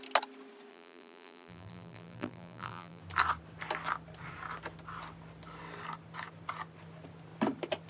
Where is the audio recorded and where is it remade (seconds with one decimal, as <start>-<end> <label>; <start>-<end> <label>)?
0.0-0.7 recorded; 0.7-3.0 remade; 3.0-7.9 recorded